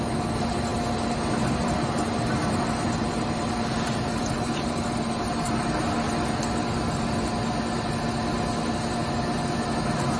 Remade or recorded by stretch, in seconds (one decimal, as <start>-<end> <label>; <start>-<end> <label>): 0.0-3.0 recorded; 3.0-5.3 remade; 5.3-10.2 recorded